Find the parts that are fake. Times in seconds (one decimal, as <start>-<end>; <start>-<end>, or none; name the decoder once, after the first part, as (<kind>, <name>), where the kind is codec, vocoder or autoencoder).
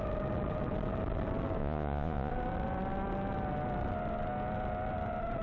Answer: 1.6-2.3 (vocoder, Vocos)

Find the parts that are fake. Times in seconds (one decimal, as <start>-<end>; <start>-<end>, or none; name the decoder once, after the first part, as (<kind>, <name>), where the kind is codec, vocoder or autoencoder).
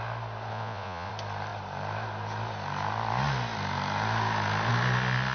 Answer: 0.5-1.1 (vocoder, Vocos)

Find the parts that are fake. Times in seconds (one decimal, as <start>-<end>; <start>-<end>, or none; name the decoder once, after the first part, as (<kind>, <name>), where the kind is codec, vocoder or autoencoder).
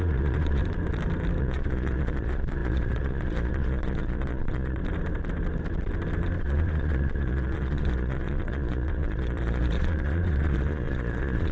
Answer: 0.0-0.6 (vocoder, Vocos); 1.4-4.8; 6.4-11.5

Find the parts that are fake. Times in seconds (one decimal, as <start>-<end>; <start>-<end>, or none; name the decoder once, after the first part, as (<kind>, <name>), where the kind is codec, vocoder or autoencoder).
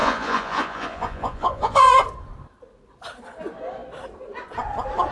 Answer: 0.0-1.9 (vocoder, Vocos)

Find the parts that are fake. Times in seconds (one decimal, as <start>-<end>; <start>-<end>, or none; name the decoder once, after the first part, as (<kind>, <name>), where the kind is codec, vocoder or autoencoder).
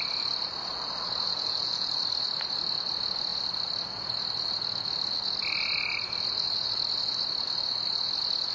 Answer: 1.3-1.9 (vocoder, Vocos)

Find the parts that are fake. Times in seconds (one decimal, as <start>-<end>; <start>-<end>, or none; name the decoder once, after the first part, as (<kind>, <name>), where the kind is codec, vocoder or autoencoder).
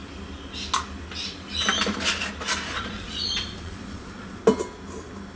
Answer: 2.7-4.4 (vocoder, Vocos)